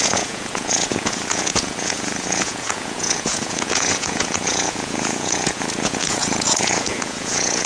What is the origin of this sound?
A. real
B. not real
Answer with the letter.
B